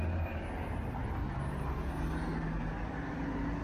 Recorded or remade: recorded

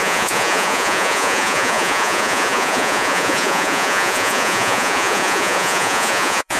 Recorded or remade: remade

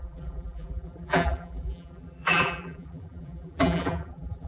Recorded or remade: remade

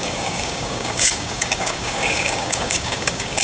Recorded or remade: remade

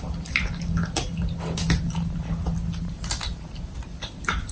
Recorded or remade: recorded